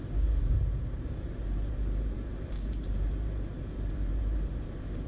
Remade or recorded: remade